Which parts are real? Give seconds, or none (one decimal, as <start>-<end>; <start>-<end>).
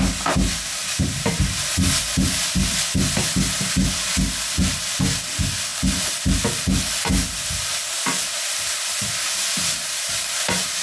0.0-10.8